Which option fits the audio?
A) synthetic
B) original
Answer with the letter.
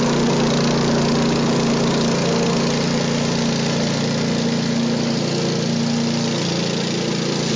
B